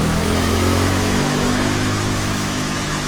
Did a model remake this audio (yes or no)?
yes